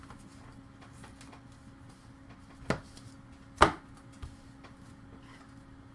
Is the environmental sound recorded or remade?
recorded